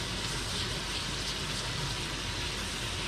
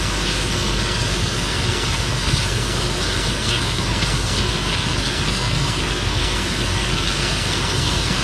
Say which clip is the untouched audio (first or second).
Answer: first